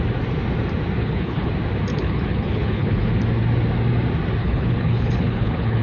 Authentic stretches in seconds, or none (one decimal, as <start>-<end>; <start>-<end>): 0.0-1.0; 1.5-1.9; 3.1-4.4